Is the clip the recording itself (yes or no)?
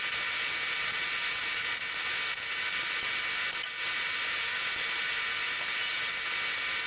yes